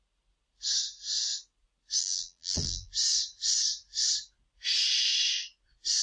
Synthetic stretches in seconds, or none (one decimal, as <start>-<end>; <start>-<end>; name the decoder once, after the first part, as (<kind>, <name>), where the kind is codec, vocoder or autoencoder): 2.0-2.9 (vocoder, BigVGAN v2)